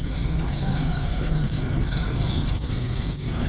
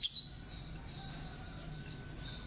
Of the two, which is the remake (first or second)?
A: first